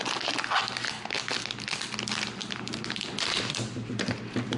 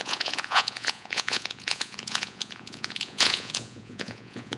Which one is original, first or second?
first